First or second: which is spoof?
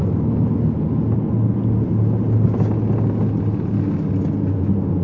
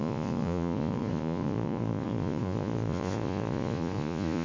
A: second